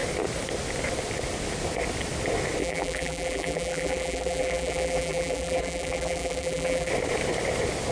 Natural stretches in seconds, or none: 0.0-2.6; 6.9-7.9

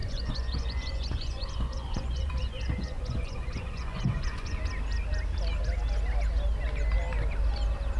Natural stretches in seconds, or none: 4.6-8.0

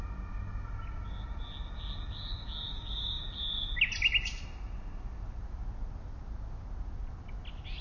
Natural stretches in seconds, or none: 0.0-2.7; 3.2-7.8

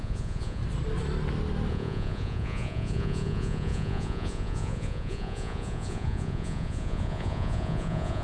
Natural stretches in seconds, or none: 0.6-1.7

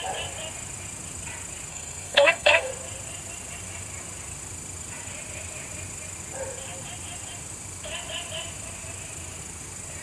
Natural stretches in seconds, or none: 0.0-1.7; 2.7-10.0